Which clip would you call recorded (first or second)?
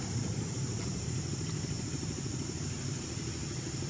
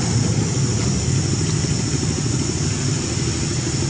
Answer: second